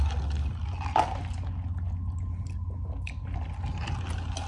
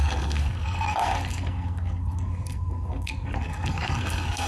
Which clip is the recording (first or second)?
first